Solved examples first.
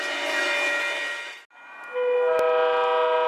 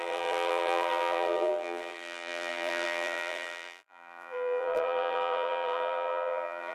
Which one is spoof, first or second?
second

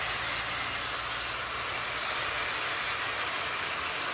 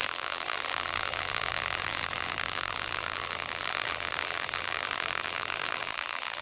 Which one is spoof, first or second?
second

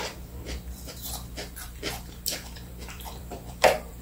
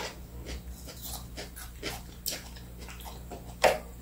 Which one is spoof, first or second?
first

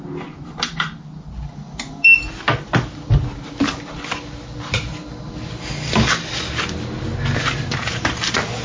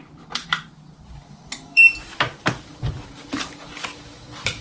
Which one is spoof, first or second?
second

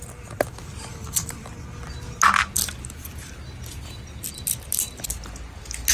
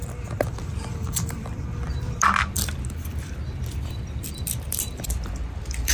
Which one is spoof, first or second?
second